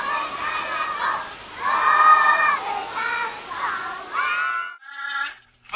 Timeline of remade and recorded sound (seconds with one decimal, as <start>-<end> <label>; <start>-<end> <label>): 0.0-5.8 recorded